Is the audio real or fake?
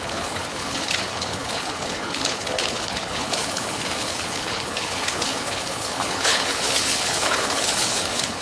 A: fake